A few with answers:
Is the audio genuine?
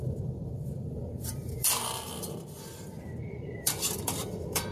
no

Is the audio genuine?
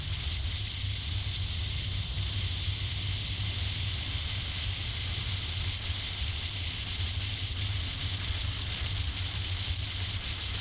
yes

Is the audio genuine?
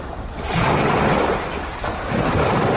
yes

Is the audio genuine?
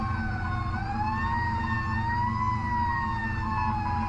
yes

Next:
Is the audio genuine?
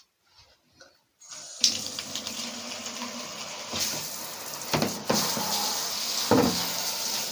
yes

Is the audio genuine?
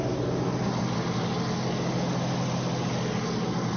yes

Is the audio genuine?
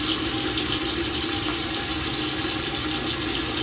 yes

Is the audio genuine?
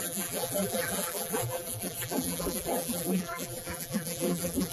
no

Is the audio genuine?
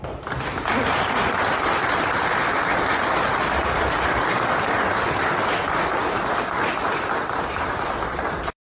yes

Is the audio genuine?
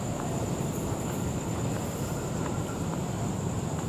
no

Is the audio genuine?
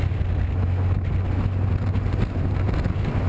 yes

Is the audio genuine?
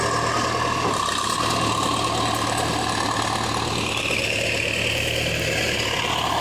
yes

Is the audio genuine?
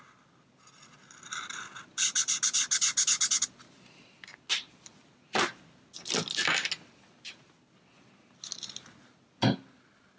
yes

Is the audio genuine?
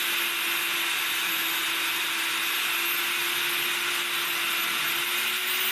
yes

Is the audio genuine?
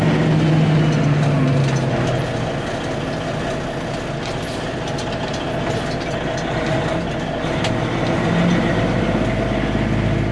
yes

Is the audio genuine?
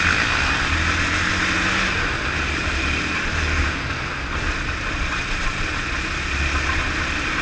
yes